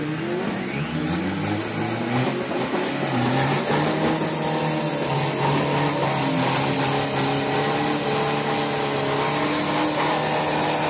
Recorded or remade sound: recorded